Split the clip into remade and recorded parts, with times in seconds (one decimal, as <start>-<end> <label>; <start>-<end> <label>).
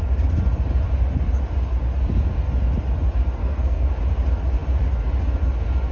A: 0.0-3.4 recorded; 3.4-3.9 remade; 3.9-5.9 recorded